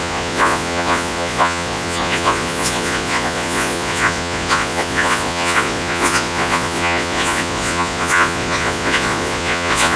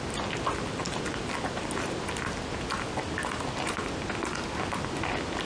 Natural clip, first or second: second